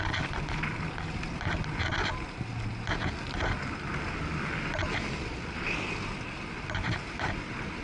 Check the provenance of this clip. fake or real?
real